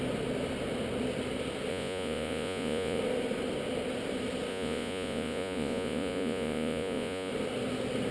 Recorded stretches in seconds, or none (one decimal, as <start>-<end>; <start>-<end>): 0.0-1.7; 3.0-4.5; 7.3-8.1